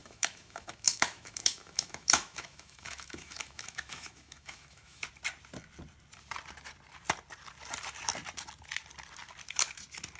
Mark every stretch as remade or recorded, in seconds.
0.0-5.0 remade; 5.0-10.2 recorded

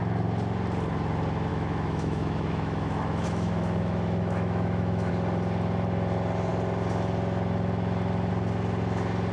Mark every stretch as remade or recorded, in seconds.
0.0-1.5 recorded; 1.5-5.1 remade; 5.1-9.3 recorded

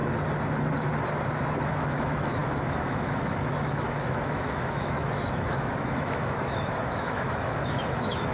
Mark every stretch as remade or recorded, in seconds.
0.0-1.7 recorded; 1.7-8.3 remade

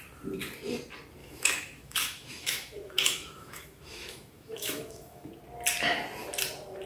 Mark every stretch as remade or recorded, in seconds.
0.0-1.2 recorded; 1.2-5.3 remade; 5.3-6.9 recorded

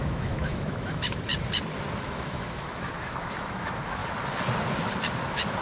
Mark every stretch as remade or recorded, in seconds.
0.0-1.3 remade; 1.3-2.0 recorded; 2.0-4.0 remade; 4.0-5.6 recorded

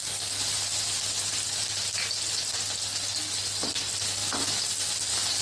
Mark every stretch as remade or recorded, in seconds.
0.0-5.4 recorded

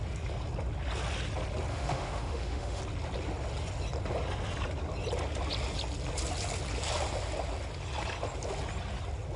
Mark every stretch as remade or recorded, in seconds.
0.0-1.7 recorded; 1.7-2.8 remade; 2.8-9.4 recorded

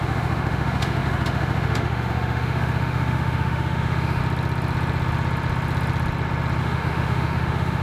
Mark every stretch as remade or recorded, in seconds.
0.0-4.2 remade; 4.2-6.6 recorded; 6.6-7.8 remade